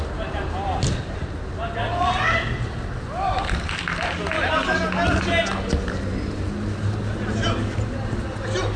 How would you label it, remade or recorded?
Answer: recorded